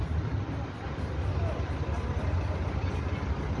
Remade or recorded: recorded